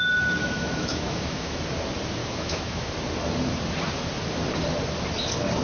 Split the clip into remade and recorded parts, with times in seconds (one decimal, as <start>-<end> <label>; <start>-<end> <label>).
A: 0.0-0.4 recorded; 0.4-1.6 remade; 1.6-2.2 recorded; 2.2-2.9 remade; 2.9-5.6 recorded